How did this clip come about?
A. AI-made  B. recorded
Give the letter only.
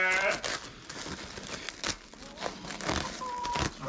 B